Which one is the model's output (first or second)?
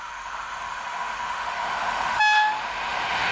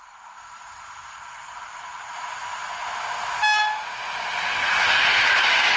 first